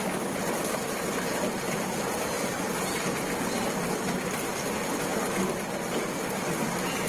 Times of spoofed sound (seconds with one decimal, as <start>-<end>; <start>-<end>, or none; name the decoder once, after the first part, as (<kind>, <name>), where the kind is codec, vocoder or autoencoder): 0.7-3.3 (vocoder, BigVGAN v2)